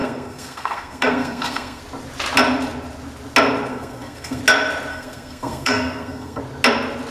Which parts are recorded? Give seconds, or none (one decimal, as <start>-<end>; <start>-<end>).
1.8-3.7; 4.4-4.9; 6.4-7.1